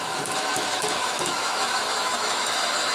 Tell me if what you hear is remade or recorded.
remade